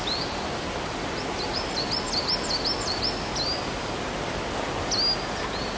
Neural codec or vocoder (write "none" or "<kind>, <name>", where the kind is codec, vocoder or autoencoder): none